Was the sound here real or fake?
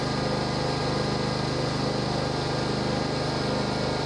real